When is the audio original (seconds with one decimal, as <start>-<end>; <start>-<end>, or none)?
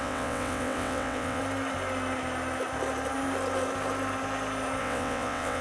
1.4-4.8